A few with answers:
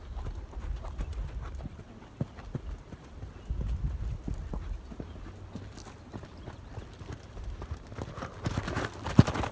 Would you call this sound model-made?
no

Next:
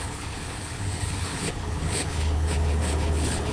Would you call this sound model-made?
yes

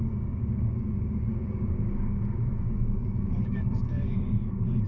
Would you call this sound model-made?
yes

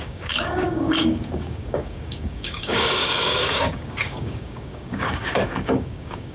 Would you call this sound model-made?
yes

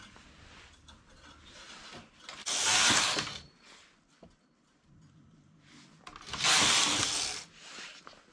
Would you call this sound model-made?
no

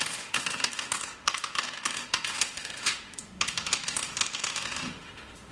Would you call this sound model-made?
yes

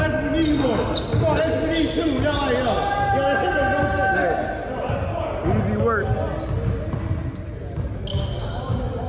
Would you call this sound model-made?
no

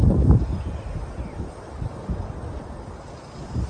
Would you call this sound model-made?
yes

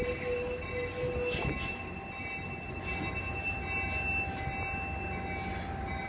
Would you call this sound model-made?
no